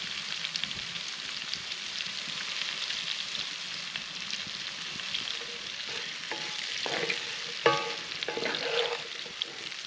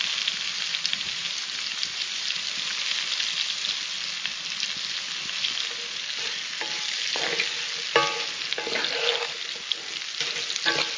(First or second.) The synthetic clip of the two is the first